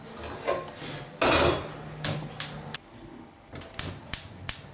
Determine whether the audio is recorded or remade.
recorded